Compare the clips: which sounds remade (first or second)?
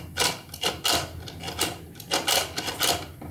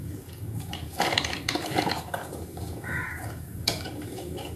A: second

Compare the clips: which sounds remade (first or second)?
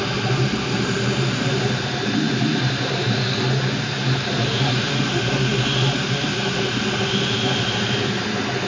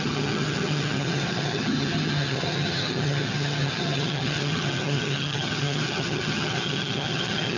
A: second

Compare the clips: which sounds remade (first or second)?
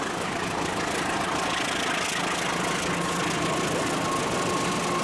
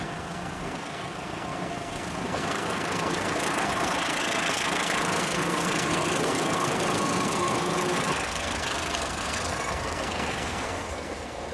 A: second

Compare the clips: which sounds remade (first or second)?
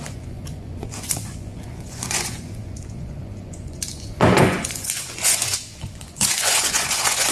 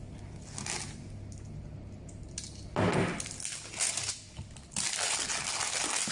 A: first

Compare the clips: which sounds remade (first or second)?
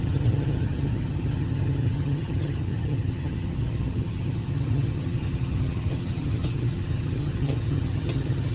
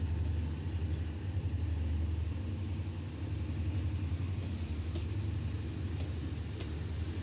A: first